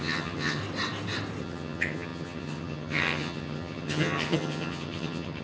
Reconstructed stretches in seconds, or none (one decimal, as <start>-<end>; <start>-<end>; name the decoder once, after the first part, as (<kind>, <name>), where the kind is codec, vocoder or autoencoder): 0.0-0.6 (vocoder, HiFi-GAN); 1.4-5.4